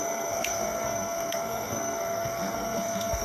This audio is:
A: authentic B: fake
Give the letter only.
B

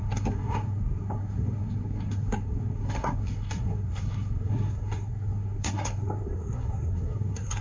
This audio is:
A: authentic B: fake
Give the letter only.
B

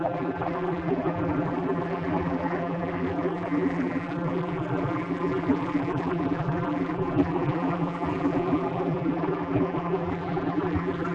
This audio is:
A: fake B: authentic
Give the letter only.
A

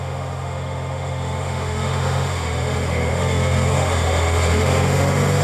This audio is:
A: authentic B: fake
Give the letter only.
B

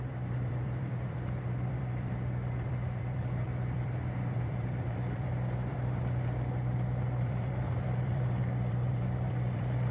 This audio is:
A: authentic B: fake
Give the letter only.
B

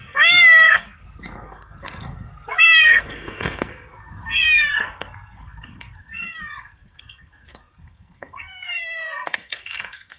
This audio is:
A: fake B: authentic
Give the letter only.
A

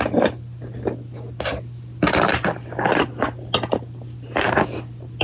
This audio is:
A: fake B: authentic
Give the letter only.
B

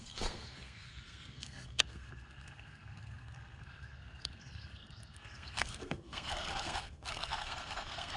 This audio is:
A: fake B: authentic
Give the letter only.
A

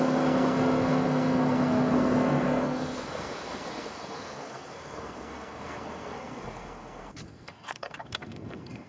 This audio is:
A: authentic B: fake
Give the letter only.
B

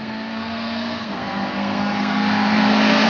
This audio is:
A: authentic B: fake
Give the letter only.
B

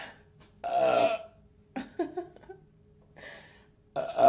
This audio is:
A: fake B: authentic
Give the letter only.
B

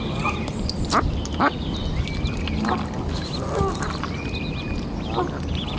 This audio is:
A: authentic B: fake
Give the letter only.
A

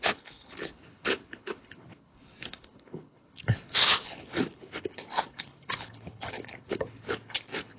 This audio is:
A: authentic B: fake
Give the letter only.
B